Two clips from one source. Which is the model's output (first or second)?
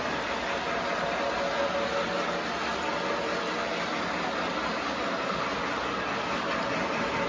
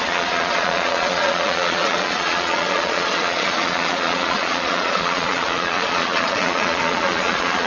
second